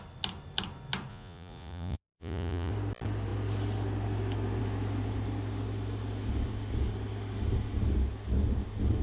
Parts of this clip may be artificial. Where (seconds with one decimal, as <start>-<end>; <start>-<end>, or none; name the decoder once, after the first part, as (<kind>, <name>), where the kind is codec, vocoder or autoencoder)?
1.1-2.7 (vocoder, Vocos)